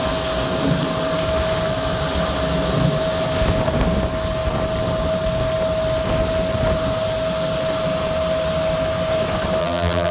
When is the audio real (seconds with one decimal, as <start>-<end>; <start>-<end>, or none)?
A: 0.0-9.6